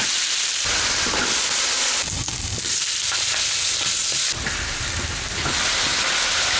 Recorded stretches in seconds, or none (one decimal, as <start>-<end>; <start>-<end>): 0.0-6.6

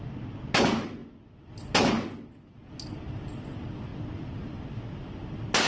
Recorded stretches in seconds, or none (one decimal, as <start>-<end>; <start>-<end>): 0.0-5.7